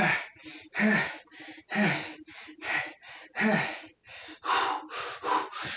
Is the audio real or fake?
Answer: real